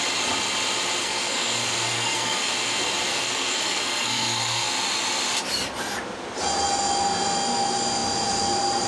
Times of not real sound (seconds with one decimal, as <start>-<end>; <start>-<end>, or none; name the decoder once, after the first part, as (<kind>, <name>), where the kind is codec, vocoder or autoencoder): 1.0-2.5 (codec, SNAC); 3.1-4.7